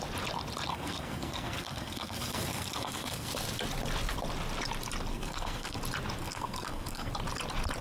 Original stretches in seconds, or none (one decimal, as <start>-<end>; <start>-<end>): 0.0-0.7; 3.3-5.1; 5.8-6.2; 7.1-7.8